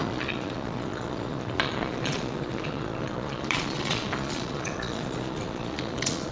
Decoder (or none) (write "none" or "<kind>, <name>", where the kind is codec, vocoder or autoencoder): vocoder, Vocos